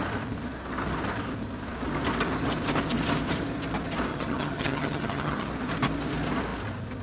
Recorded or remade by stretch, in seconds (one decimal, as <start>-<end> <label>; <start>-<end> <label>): 0.0-4.1 recorded; 4.1-5.5 remade; 5.5-7.0 recorded